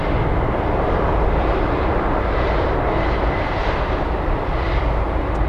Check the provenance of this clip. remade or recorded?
remade